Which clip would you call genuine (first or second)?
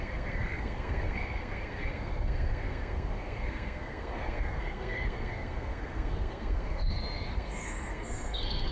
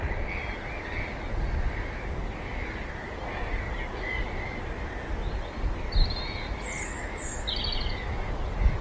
second